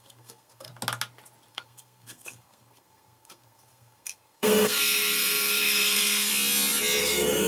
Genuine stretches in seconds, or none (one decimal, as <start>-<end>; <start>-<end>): 0.7-1.5; 6.3-7.0